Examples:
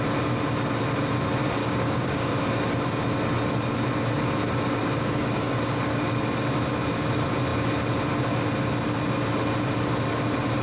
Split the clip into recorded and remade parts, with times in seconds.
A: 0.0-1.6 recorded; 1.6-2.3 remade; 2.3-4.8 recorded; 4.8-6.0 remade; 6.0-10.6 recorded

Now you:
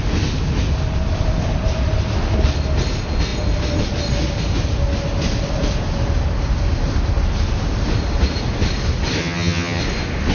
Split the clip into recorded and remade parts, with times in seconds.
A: 0.0-9.2 recorded; 9.2-9.8 remade; 9.8-10.3 recorded